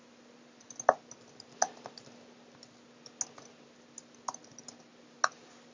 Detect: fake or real real